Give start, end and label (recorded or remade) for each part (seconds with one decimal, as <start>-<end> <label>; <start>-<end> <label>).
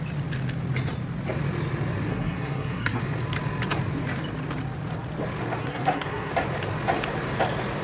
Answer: 0.0-2.1 recorded; 2.1-3.0 remade; 3.0-5.6 recorded; 5.6-6.3 remade; 6.3-7.8 recorded